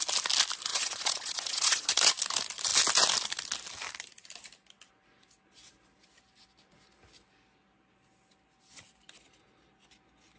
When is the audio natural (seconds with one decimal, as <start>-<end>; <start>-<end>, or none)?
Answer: 0.0-0.7; 1.9-10.4